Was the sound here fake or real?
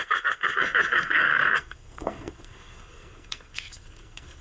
fake